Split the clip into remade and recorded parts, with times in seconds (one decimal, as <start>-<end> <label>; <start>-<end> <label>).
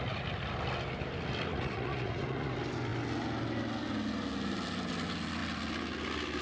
0.0-1.5 recorded; 1.5-2.5 remade; 2.5-6.4 recorded